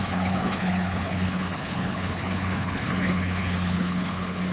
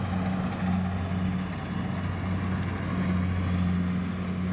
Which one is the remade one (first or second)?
first